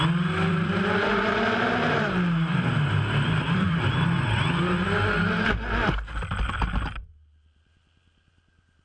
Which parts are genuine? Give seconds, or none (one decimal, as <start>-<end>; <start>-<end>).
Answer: 0.0-0.5; 4.3-8.8